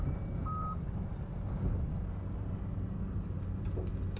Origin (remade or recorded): recorded